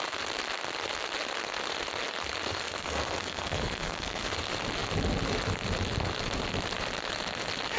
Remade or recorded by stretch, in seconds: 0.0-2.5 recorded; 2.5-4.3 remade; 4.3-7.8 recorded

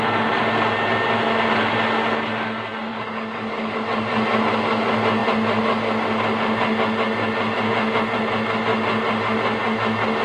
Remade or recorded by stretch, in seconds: 0.0-2.9 recorded; 2.9-3.7 remade; 3.7-10.2 recorded

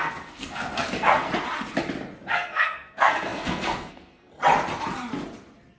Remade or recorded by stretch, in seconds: 0.0-1.3 remade; 1.3-2.3 recorded; 2.3-4.3 remade; 4.3-5.8 recorded

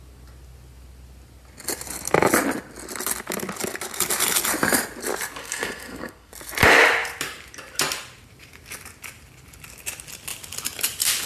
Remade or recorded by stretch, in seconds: 0.0-5.4 recorded; 5.4-6.3 remade; 6.3-11.3 recorded

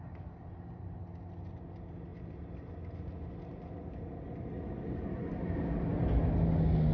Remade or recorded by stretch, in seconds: 0.0-6.9 recorded

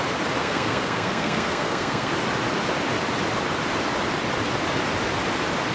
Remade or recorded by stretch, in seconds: 0.0-0.4 recorded; 0.4-2.1 remade; 2.1-5.7 recorded

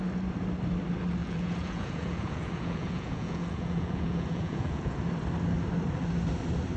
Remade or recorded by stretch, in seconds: 0.0-1.2 recorded; 1.2-5.0 remade; 5.0-6.8 recorded